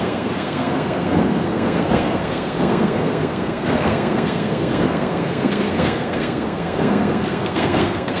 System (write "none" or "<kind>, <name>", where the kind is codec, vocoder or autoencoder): codec, SNAC